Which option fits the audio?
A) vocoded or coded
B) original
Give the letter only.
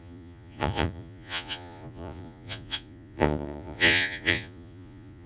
A